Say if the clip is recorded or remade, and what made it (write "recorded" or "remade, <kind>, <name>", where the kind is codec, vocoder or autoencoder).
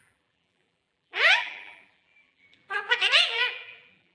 remade, vocoder, BigVGAN v2